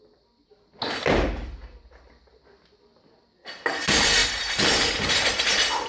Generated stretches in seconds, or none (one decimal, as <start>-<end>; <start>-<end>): none